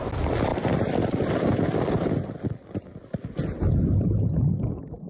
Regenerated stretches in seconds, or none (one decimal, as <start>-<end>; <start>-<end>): none